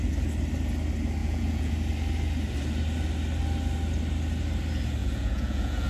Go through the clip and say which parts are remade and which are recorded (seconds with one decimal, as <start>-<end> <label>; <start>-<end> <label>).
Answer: 0.0-1.2 recorded; 1.2-1.7 remade; 1.7-5.0 recorded; 5.0-5.9 remade